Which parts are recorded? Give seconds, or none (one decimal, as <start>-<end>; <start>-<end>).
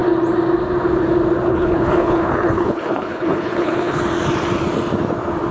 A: 0.0-1.5; 4.0-5.5